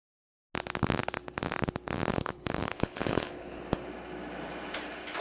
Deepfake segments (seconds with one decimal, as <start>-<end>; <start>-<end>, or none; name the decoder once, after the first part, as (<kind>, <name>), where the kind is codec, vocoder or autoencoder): 2.1-3.6 (codec, HILCodec)